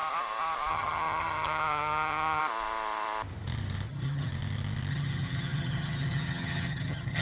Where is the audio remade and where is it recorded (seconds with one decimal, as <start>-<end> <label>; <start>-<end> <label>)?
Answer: 0.0-0.7 recorded; 0.7-2.4 remade; 2.4-3.9 recorded; 3.9-4.3 remade; 4.3-4.9 recorded; 4.9-7.2 remade